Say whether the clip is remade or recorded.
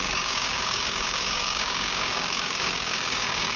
remade